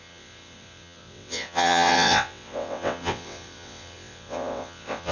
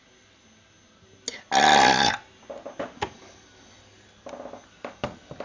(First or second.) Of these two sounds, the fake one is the first